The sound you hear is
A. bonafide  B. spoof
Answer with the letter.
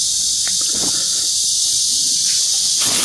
B